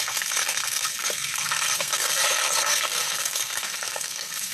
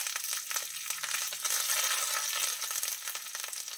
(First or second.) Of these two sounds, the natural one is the second